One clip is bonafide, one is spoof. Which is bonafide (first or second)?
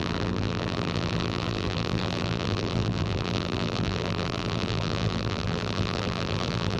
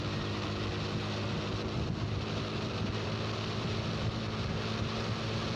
second